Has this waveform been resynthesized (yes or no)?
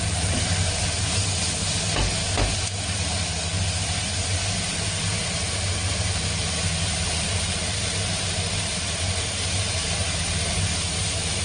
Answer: no